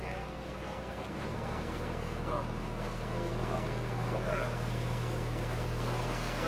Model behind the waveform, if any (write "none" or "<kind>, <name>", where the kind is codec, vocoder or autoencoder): codec, SNAC